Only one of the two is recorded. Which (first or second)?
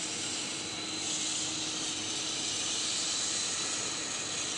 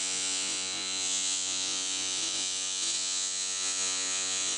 first